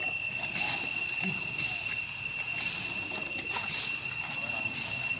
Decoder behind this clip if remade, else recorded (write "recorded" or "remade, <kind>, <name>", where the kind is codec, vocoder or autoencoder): recorded